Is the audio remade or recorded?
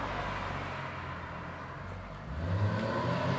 recorded